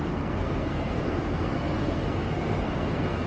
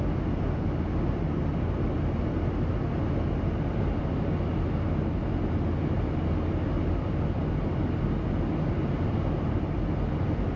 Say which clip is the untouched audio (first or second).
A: second